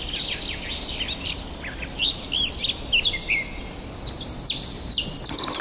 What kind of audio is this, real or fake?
real